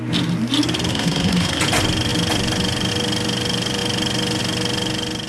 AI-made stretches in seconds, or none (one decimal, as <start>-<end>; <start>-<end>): 0.9-1.6